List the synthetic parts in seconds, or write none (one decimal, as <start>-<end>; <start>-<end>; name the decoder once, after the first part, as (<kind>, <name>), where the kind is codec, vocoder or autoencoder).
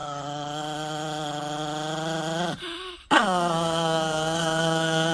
3.1-5.1 (codec, SNAC)